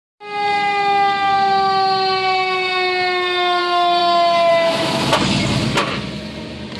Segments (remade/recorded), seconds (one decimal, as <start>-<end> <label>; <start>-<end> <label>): 0.0-6.8 recorded